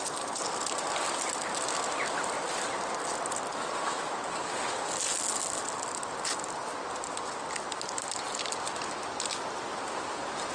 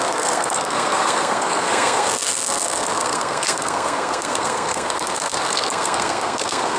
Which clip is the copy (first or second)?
second